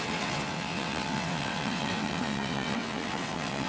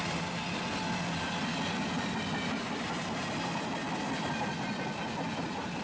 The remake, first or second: first